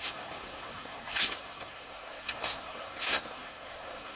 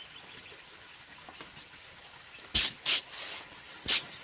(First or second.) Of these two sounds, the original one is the second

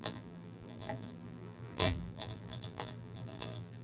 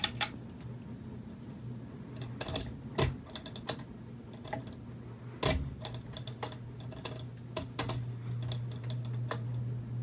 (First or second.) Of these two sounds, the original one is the second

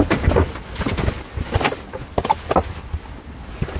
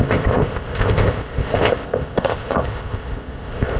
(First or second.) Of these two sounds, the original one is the first